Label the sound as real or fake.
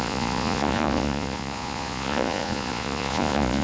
fake